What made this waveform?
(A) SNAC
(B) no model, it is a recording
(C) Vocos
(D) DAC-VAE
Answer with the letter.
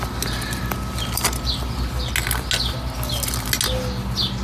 B